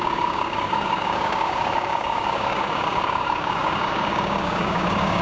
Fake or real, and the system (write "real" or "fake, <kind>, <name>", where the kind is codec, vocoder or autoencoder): fake, codec, DAC